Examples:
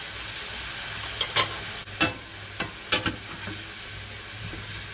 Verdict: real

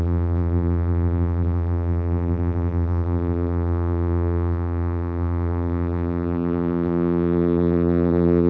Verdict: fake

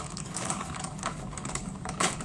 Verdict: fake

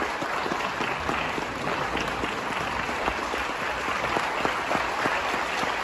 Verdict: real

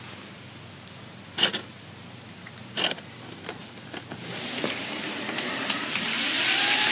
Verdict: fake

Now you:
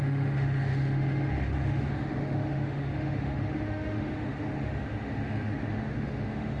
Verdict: fake